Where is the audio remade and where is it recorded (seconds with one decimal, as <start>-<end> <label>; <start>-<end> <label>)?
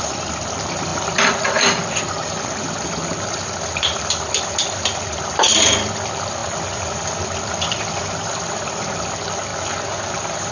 0.0-9.5 remade; 9.5-10.1 recorded; 10.1-10.5 remade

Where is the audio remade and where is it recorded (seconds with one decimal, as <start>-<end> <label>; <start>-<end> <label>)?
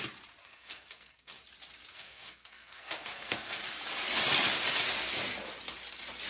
0.0-0.4 recorded; 0.4-1.4 remade; 1.4-1.9 recorded; 1.9-3.6 remade; 3.6-6.3 recorded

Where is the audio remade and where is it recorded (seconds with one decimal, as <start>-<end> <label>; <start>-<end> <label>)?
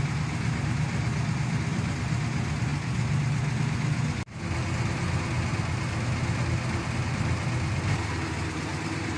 0.0-9.2 recorded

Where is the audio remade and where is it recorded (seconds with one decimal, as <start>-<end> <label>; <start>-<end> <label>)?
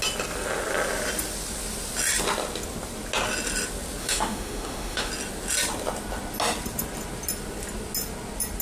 0.0-4.0 recorded; 4.0-5.1 remade; 5.1-8.6 recorded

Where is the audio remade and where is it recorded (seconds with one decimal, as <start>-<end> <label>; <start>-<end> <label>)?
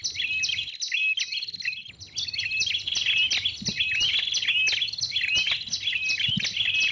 0.0-6.9 recorded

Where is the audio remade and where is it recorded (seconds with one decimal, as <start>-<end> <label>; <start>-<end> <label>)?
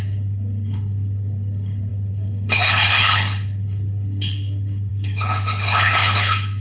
0.0-6.6 remade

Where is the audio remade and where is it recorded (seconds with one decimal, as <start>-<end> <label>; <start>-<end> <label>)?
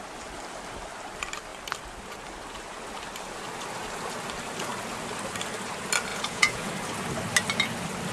0.0-6.1 recorded; 6.1-6.7 remade; 6.7-8.1 recorded